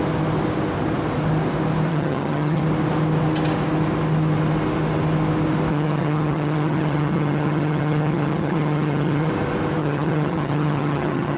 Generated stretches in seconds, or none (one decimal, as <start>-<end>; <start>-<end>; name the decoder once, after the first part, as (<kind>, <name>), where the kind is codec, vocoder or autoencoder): 1.9-2.6 (vocoder, HiFi-GAN); 5.7-9.3; 9.8-11.4